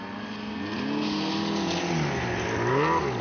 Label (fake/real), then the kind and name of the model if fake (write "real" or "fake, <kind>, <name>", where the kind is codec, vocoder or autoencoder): real